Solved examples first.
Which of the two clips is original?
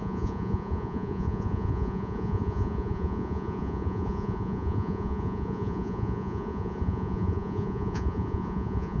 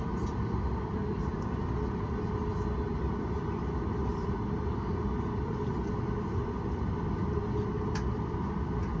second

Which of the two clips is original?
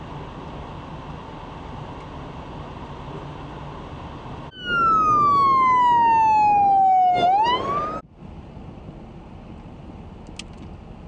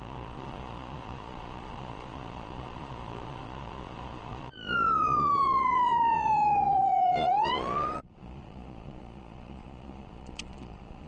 first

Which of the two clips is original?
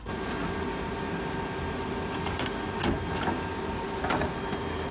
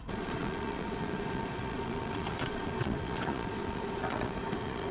first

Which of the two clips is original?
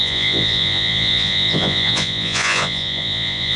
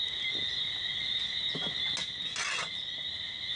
second